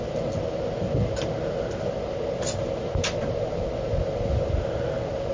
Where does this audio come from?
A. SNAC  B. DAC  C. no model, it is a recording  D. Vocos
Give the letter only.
C